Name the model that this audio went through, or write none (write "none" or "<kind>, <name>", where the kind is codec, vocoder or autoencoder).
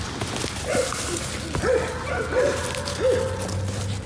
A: none